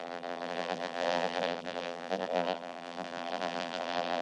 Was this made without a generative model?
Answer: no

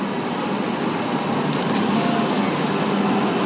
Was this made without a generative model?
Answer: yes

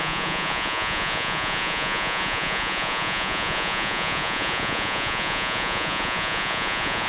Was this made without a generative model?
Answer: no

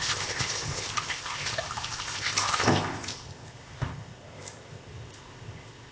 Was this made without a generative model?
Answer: no